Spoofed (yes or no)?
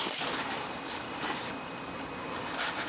no